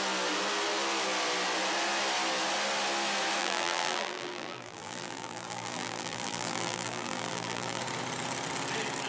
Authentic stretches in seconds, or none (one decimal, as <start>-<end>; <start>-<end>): 0.0-3.4; 7.8-9.1